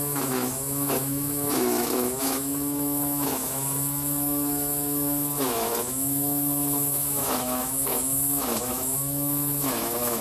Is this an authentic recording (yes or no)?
no